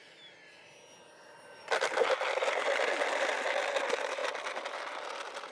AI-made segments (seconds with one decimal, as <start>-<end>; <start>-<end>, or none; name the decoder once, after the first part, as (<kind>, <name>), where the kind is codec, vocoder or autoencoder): none

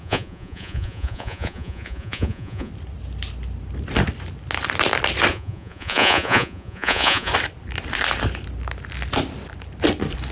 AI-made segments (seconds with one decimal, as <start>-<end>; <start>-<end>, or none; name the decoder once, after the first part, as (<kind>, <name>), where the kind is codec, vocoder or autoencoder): 0.0-2.7 (vocoder, Vocos); 5.3-7.3

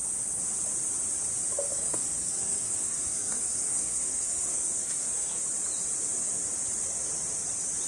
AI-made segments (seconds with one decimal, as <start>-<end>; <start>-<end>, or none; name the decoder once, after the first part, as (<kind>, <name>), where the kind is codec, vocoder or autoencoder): 1.7-5.4 (codec, SNAC)

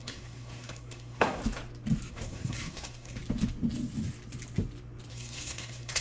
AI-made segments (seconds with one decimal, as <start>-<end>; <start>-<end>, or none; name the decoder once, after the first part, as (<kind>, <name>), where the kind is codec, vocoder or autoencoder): 0.0-1.4 (codec, SNAC); 2.1-3.2; 5.1-6.0

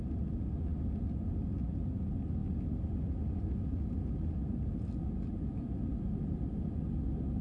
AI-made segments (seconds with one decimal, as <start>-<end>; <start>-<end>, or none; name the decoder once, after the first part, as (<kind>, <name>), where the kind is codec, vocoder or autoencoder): none